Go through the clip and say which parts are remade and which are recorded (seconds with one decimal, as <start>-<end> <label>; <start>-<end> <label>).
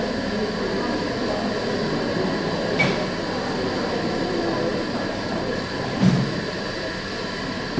0.0-4.7 recorded; 4.7-7.2 remade; 7.2-7.8 recorded